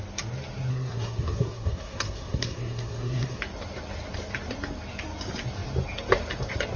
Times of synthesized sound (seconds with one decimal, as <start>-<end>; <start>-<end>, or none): 0.7-3.4